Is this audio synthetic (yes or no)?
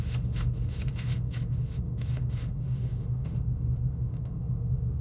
yes